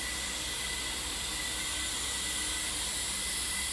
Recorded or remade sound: recorded